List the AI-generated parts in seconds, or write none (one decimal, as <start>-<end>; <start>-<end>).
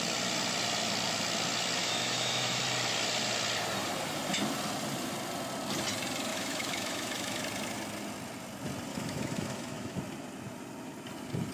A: 1.8-2.6; 6.3-7.4; 8.9-10.0